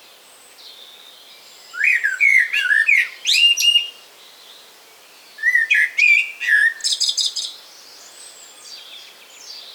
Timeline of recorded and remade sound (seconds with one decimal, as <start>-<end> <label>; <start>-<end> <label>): 0.0-6.8 recorded; 6.8-7.7 remade; 7.7-9.7 recorded